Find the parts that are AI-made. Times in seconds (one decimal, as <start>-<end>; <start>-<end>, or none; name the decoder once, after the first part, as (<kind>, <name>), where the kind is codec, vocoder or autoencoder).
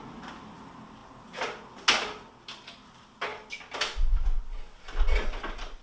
none